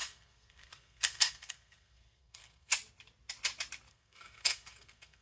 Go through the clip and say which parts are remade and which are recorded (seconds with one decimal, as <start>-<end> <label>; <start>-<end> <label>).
0.0-2.7 remade; 2.7-3.9 recorded; 3.9-5.2 remade

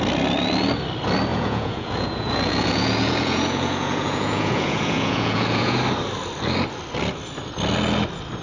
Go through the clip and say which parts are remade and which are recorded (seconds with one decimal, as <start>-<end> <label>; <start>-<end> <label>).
0.0-1.3 recorded; 1.3-5.8 remade; 5.8-8.4 recorded

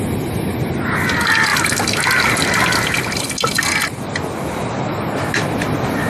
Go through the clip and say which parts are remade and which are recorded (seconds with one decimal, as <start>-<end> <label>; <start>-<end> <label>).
0.0-6.1 recorded